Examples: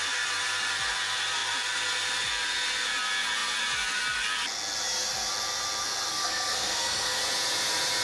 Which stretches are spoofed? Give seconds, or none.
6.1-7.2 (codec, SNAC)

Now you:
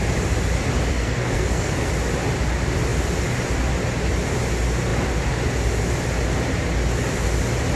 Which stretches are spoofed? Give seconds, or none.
0.9-1.9 (codec, SNAC)

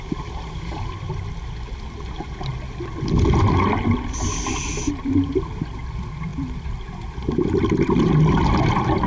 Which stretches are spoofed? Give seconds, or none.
none

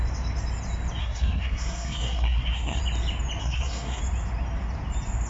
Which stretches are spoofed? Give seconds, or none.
1.0-2.8 (codec, SNAC); 3.4-4.0

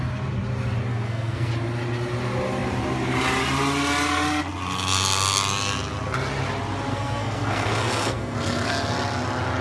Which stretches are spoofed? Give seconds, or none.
0.9-1.5 (codec, SNAC); 6.9-8.7

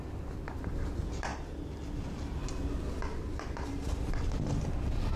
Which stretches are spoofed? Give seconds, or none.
none

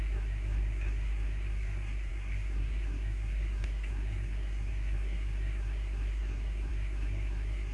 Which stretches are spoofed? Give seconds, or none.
0.0-7.7 (codec, SNAC)

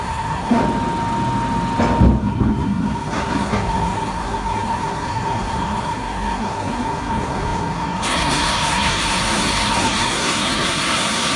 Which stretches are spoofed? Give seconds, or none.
0.0-0.6 (codec, SNAC); 2.2-11.4